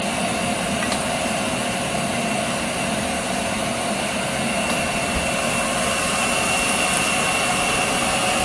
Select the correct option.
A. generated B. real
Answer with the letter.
B